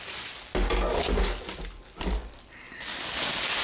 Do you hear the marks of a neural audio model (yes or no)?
no